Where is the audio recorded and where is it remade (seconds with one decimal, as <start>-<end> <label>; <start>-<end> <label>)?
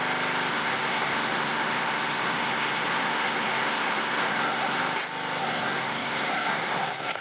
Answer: 0.0-0.5 recorded; 0.5-4.8 remade; 4.8-5.4 recorded; 5.4-7.2 remade